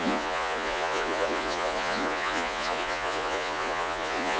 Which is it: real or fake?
fake